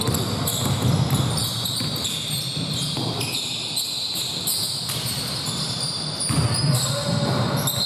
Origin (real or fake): real